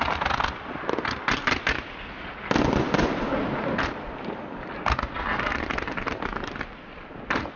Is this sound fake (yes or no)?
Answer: no